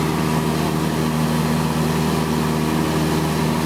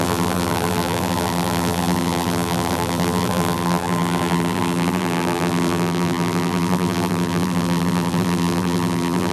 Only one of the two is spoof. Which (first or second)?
second